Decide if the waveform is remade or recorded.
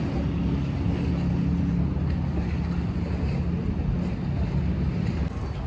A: recorded